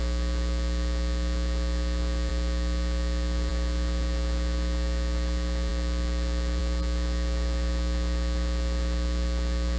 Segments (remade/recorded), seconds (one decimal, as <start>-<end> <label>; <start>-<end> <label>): 0.0-9.8 recorded